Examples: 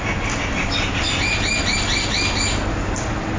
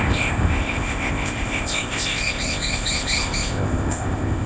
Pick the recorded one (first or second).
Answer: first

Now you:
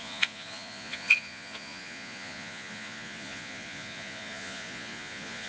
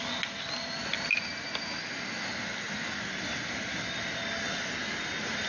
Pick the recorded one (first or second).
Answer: second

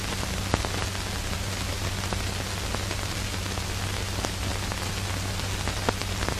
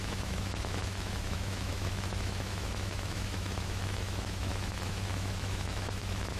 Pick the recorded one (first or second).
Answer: first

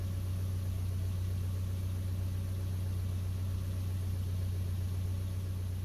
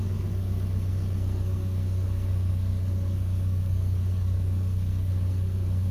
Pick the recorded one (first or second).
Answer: first